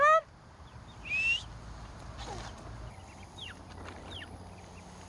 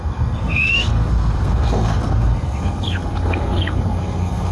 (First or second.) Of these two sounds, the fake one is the second